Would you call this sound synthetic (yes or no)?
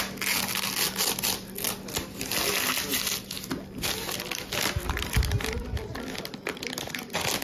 no